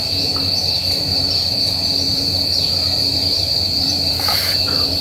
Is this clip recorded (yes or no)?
no